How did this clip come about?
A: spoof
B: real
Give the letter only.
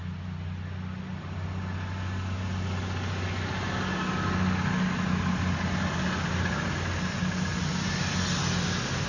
B